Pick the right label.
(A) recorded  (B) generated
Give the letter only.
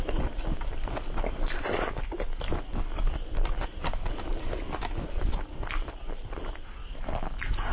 A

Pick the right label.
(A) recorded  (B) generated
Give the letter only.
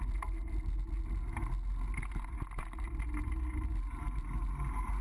A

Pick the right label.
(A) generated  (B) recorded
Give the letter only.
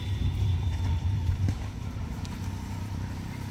A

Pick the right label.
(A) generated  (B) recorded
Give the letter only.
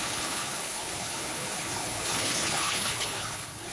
A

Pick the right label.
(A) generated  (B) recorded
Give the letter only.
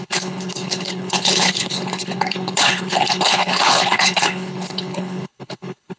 A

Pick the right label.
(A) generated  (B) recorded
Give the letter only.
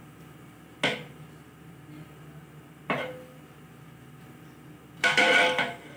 B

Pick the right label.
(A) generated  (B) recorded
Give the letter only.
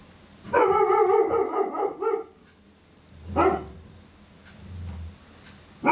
B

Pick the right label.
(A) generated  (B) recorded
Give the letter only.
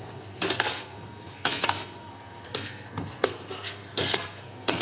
A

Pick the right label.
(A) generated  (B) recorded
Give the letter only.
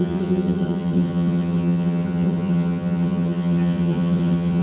A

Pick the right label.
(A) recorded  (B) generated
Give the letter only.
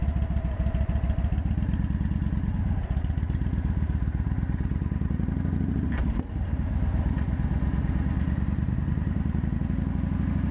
A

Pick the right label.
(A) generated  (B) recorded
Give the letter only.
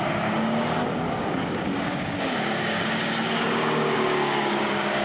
A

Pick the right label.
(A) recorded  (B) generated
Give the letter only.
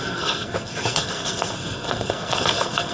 B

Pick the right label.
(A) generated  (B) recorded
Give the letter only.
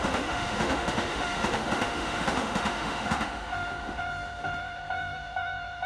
A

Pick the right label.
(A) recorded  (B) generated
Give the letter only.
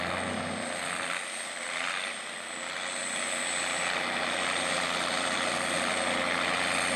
A